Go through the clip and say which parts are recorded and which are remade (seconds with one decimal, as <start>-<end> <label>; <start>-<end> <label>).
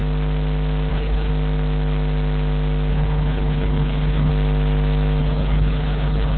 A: 0.0-0.9 recorded; 0.9-1.3 remade; 1.3-2.9 recorded; 2.9-4.3 remade; 4.3-5.2 recorded; 5.2-6.4 remade